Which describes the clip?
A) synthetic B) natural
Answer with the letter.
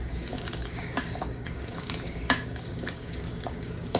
A